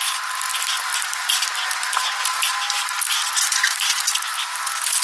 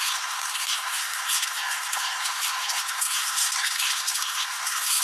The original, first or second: first